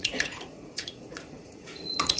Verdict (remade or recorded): remade